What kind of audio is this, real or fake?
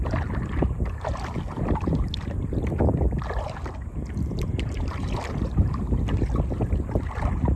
real